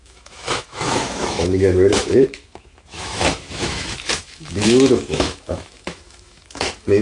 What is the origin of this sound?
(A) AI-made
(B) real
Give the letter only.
A